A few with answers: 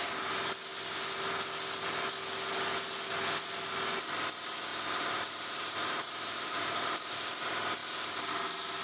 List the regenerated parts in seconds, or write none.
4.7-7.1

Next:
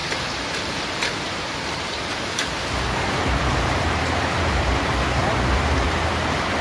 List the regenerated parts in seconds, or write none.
0.0-5.2

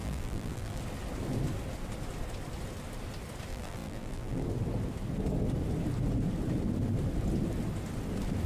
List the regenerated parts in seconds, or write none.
0.0-0.8; 3.5-4.4

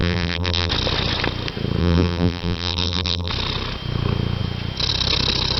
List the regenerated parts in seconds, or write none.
0.0-0.7; 1.8-3.3

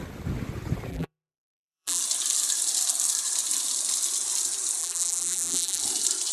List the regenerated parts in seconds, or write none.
0.9-2.0; 4.8-5.8

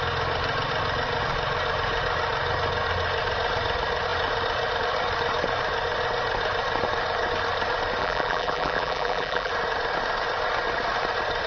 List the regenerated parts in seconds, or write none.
8.0-9.5

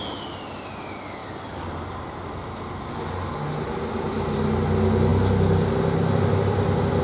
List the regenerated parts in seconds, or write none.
1.2-2.1